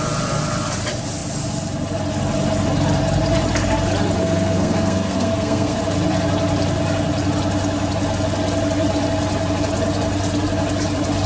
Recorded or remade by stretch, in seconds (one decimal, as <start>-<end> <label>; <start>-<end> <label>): 0.0-4.2 recorded; 4.2-5.8 remade; 5.8-11.3 recorded